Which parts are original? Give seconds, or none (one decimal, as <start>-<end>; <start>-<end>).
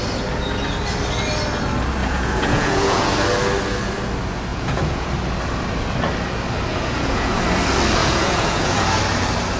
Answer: 0.0-2.0; 3.2-4.5; 5.1-6.7; 7.3-8.0; 9.0-9.6